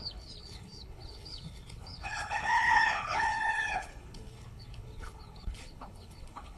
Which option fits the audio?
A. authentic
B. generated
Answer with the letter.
B